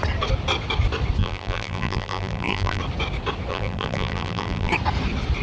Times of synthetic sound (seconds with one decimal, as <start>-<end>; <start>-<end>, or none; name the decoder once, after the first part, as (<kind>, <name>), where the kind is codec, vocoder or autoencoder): 1.2-2.8 (vocoder, BigVGAN v2); 3.5-4.7